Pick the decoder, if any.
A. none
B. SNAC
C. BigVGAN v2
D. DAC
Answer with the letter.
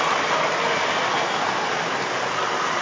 A